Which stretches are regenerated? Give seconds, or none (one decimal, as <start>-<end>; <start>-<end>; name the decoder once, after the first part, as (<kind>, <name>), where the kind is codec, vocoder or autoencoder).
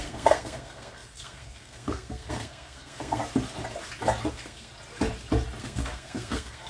0.0-3.2 (codec, SNAC); 4.3-4.7; 5.6-6.7